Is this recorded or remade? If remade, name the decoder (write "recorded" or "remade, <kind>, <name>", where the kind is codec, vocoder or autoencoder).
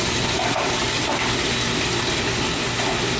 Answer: recorded